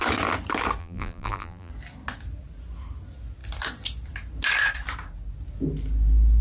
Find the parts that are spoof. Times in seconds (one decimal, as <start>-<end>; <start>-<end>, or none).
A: 0.8-1.7